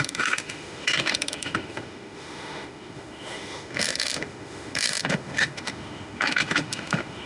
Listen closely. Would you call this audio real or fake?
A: fake